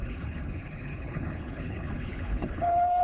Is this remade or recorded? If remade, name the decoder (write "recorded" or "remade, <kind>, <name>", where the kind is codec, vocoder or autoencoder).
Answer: remade, codec, HILCodec